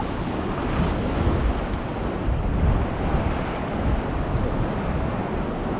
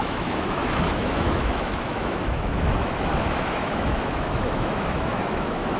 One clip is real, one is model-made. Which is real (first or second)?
first